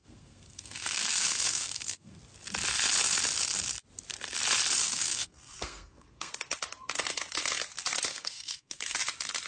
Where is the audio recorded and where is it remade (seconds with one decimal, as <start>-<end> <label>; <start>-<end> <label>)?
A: 0.0-2.2 remade; 2.2-4.8 recorded; 4.8-6.3 remade; 6.3-8.1 recorded; 8.1-8.8 remade; 8.8-9.5 recorded